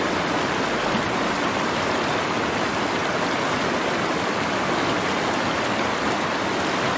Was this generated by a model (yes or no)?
no